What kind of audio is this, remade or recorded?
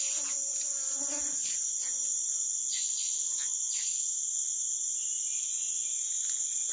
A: recorded